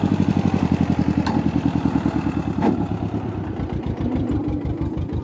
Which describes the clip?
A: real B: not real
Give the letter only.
B